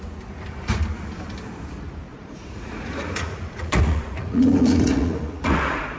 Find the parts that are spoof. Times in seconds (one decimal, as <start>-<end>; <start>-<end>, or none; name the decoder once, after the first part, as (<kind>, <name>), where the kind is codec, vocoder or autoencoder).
2.1-6.0 (vocoder, Vocos)